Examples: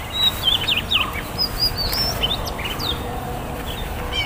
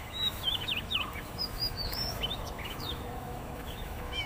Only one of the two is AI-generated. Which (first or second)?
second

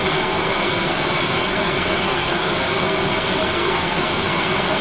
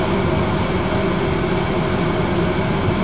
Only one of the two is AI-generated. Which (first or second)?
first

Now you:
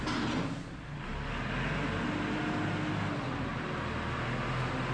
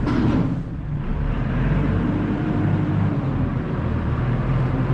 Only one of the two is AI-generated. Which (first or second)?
second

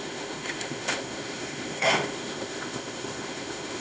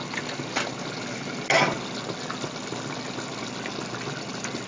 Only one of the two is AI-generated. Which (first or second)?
first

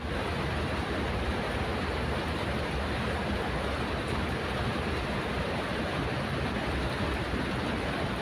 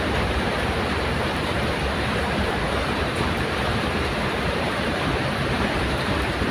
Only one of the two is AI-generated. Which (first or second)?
second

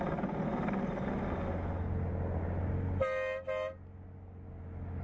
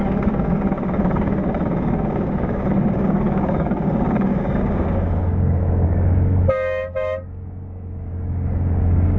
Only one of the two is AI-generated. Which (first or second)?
second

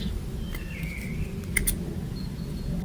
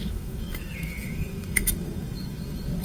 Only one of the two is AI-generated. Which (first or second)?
second